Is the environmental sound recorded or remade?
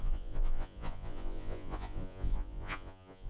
remade